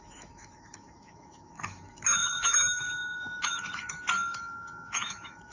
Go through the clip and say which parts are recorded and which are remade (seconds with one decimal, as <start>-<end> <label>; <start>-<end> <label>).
0.0-5.5 remade